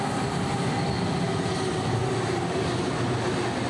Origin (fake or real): real